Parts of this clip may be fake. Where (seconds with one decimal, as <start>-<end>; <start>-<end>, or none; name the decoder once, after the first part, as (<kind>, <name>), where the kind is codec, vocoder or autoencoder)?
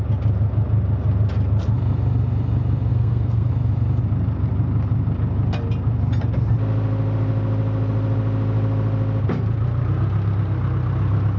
2.9-3.5 (codec, SNAC)